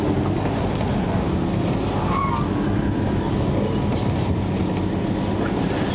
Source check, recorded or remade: recorded